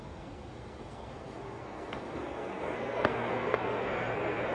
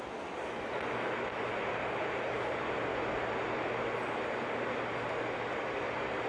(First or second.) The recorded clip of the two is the second